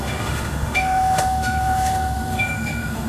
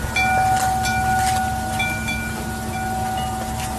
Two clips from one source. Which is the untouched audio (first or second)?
second